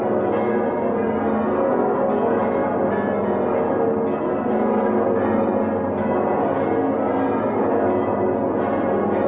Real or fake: real